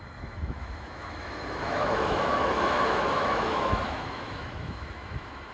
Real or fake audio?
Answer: fake